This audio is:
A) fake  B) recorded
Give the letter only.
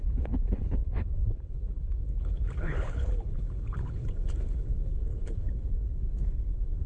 A